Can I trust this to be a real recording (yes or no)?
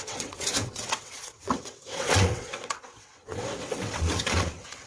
no